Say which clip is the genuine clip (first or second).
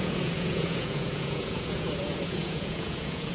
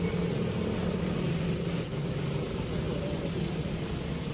second